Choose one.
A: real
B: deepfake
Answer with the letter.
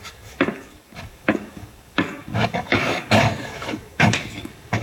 B